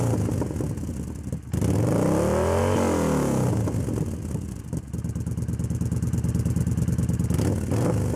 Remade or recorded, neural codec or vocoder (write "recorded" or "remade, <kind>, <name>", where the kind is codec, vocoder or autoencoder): recorded